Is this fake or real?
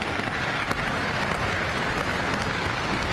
real